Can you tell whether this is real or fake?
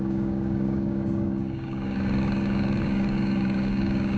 fake